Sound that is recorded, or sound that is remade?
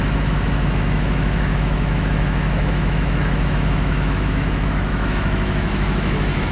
remade